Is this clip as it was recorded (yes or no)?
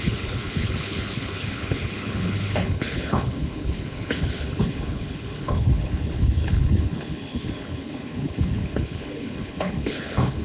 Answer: no